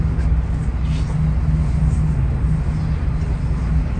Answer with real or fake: real